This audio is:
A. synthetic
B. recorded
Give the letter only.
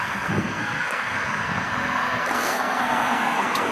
A